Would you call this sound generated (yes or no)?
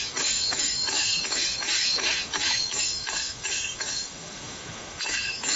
yes